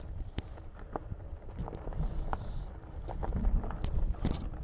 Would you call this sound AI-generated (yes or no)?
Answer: no